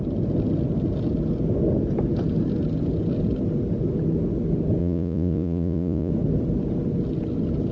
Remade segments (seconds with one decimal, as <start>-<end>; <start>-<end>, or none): 4.8-6.1